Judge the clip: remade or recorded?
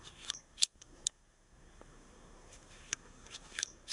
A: remade